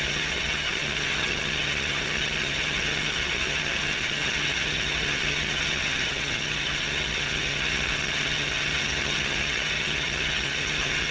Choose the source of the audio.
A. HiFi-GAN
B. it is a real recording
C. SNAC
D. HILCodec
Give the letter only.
A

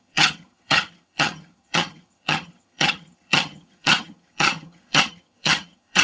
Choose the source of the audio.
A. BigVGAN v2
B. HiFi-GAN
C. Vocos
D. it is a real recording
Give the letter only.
B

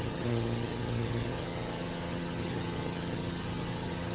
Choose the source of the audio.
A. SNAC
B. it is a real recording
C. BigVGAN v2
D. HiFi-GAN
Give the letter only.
D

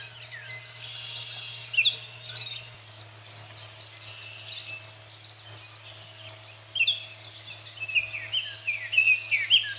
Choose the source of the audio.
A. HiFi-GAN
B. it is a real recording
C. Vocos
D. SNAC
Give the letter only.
B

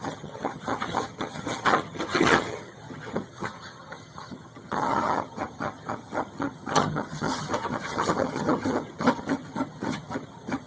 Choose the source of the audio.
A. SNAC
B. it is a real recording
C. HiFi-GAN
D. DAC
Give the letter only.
C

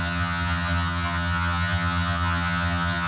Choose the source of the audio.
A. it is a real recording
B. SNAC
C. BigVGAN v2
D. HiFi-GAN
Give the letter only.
D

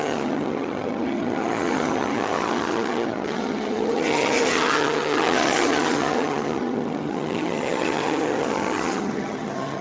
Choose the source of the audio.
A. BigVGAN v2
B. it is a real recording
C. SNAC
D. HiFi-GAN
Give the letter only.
D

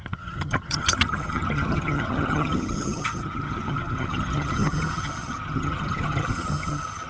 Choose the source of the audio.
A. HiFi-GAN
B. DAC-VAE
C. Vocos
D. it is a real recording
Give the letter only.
A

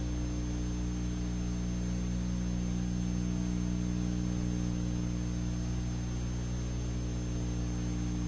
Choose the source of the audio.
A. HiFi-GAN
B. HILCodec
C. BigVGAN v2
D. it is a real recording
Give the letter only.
D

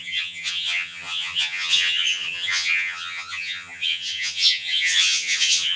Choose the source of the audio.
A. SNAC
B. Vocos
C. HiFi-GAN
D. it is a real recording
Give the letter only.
C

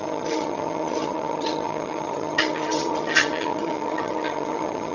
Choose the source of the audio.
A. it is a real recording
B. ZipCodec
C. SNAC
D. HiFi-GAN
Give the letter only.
D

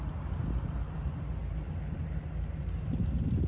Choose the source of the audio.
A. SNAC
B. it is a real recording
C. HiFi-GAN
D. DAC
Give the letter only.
B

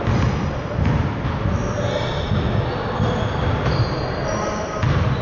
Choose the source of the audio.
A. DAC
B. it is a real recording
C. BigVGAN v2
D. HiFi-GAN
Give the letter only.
B